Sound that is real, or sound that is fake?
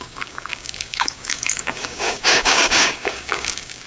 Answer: fake